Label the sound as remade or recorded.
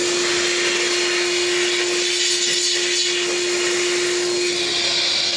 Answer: recorded